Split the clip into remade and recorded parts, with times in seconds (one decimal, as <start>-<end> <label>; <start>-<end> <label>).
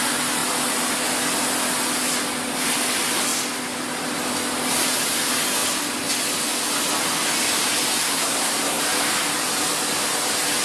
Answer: 0.0-8.0 recorded; 8.0-8.8 remade; 8.8-10.6 recorded